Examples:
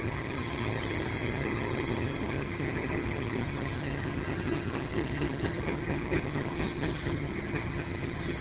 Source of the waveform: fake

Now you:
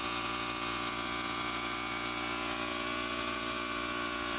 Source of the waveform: fake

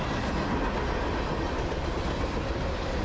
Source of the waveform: real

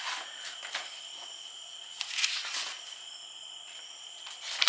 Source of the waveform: real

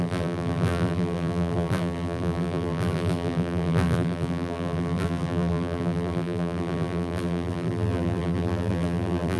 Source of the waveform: fake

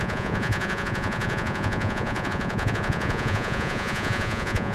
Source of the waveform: fake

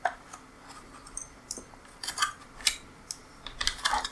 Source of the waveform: real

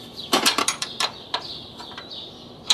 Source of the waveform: fake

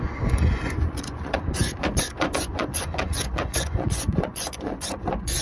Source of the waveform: fake